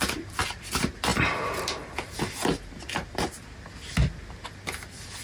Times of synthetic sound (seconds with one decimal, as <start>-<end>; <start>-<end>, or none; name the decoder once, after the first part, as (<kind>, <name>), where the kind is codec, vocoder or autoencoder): none